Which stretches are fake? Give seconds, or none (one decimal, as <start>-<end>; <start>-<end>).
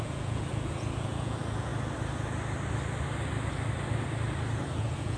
0.0-1.7; 4.8-5.2